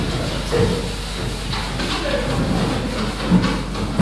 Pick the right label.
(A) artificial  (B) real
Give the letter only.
B